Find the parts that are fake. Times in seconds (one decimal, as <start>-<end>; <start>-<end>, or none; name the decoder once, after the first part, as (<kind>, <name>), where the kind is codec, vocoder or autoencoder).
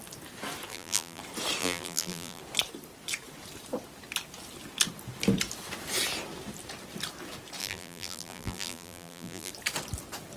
0.7-1.2 (vocoder, BigVGAN v2); 1.6-2.4; 7.6-9.5